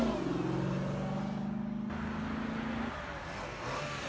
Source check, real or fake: real